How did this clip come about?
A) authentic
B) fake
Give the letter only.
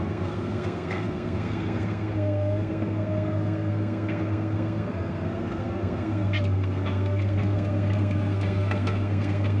B